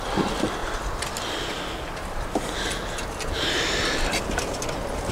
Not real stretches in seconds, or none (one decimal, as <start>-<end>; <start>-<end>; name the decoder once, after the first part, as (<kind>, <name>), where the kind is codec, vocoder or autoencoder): none